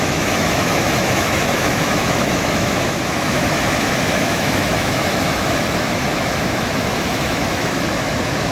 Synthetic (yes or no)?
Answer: yes